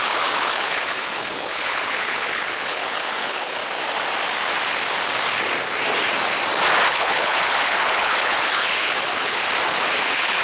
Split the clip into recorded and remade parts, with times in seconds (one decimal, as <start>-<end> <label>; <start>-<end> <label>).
0.0-3.6 remade; 3.6-6.9 recorded; 6.9-9.4 remade; 9.4-10.0 recorded; 10.0-10.4 remade